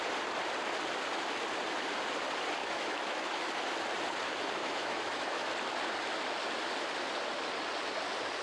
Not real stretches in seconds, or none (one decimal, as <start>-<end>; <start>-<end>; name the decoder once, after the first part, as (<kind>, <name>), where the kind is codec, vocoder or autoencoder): 2.6-3.5 (autoencoder, DAC-VAE); 4.6-5.5